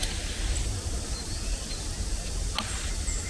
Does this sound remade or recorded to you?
recorded